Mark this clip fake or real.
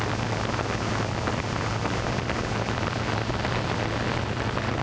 real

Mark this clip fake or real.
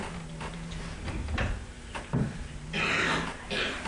real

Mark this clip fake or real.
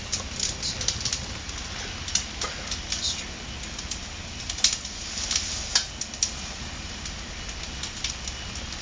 real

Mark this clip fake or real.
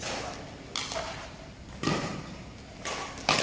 real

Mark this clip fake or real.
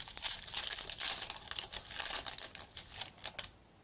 real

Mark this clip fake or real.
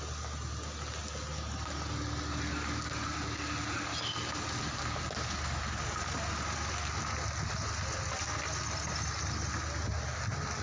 real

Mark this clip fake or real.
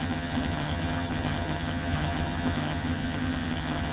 fake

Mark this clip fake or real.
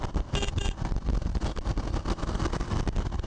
real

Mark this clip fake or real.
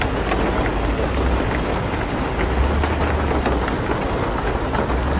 real